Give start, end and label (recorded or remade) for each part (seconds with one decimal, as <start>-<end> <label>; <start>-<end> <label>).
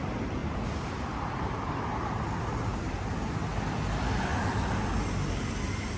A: 0.0-0.4 recorded; 0.4-2.2 remade; 2.2-2.7 recorded; 2.7-3.5 remade; 3.5-6.0 recorded